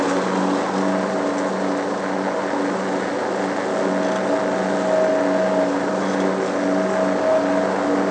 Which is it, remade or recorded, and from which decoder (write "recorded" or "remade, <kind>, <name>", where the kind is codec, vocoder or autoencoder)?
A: recorded